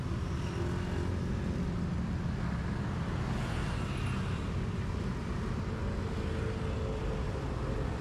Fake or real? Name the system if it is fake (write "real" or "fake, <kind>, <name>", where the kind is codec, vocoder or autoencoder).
real